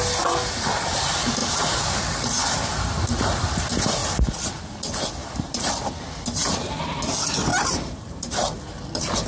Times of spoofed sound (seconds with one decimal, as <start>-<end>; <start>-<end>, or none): 5.2-5.7; 7.5-8.2